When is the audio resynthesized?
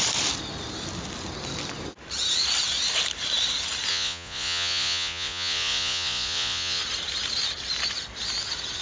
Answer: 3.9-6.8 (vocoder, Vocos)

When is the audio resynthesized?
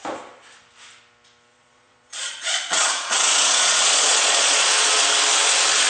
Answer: 1.5-5.0 (vocoder, Vocos)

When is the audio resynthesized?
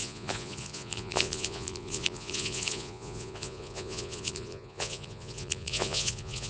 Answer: 0.0-6.5 (vocoder, Vocos)